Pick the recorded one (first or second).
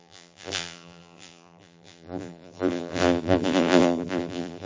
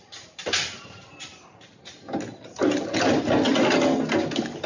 second